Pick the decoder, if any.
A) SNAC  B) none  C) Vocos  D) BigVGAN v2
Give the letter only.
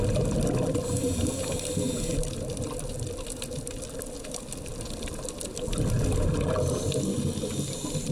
B